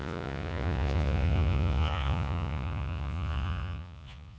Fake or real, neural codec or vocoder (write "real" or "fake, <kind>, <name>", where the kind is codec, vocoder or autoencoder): fake, vocoder, Vocos